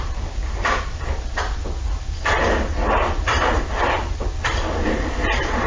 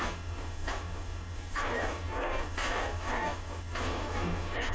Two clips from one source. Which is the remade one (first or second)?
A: second